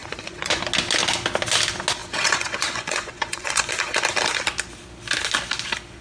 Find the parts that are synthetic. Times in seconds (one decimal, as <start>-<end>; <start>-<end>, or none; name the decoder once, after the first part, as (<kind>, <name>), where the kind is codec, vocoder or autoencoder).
0.0-0.6 (vocoder, Vocos); 2.0-3.7

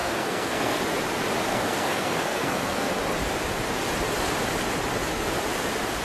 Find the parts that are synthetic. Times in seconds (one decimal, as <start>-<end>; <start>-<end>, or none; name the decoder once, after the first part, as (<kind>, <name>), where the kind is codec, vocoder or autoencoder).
0.0-0.8 (codec, SNAC); 1.5-2.9